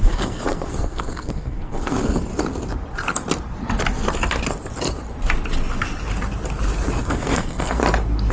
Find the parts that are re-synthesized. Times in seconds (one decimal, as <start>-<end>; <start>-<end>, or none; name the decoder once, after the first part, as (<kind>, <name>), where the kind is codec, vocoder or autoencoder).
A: 0.0-2.3 (codec, SNAC); 7.0-7.8